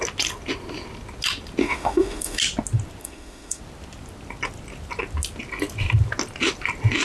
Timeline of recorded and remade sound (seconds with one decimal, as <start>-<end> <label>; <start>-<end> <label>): 0.0-1.6 recorded; 1.6-2.4 remade; 2.4-3.0 recorded; 3.0-3.6 remade; 3.6-7.0 recorded